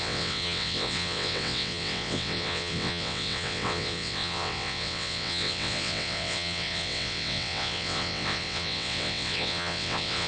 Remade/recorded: remade